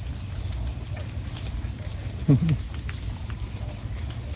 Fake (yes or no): no